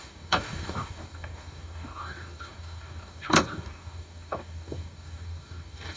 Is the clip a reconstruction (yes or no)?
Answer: yes